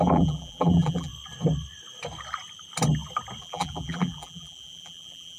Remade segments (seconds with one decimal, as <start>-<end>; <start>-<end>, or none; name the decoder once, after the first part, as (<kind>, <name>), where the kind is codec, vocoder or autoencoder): 0.0-1.1 (vocoder, BigVGAN v2); 3.4-5.4